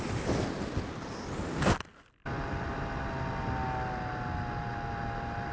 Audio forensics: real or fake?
real